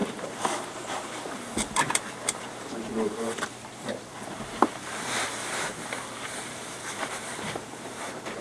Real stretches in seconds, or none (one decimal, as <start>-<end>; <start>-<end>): none